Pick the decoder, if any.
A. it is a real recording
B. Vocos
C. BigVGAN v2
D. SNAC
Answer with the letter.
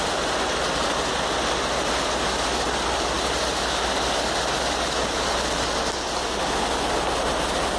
A